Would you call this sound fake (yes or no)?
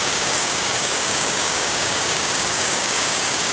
yes